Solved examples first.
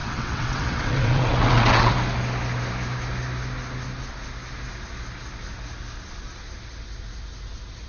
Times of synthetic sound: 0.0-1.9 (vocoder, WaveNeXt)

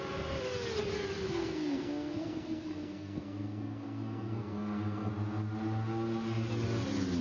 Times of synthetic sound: 1.2-5.1 (codec, SNAC)

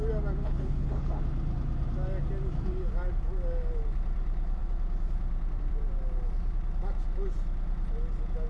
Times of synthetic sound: 0.4-1.2 (codec, HILCodec)

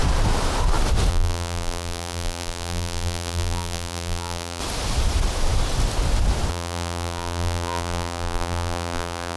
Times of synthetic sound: 1.1-4.6 (vocoder, BigVGAN v2); 6.5-9.4

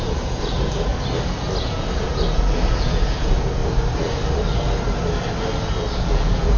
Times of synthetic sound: 0.0-0.9 (vocoder, Vocos); 1.6-3.6; 5.9-6.6

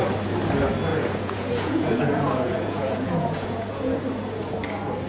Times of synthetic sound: 0.9-4.0 (vocoder, Vocos)

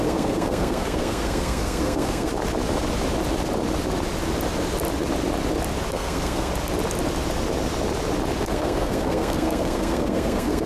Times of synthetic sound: 0.0-2.3 (codec, SNAC); 5.9-6.5; 8.4-10.7